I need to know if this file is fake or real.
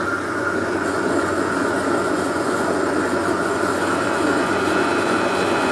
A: fake